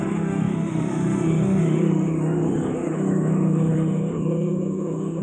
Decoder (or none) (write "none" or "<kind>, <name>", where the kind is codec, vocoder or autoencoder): autoencoder, DAC-VAE